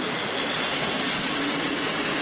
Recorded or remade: recorded